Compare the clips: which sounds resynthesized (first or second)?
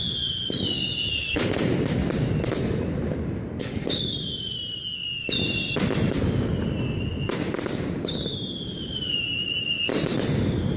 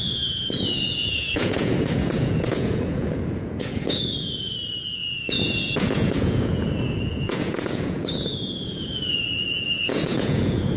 second